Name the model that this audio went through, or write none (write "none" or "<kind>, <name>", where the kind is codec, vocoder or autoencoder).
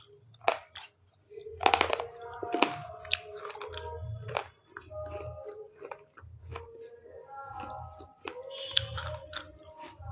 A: none